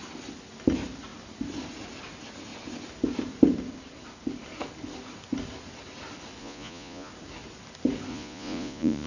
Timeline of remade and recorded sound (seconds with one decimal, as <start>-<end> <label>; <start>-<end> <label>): 0.0-6.4 recorded; 6.4-7.1 remade; 7.1-8.1 recorded; 8.1-9.1 remade